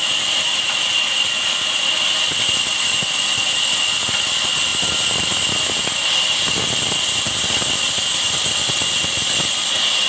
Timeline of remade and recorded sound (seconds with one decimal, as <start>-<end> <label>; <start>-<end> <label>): 0.0-10.1 recorded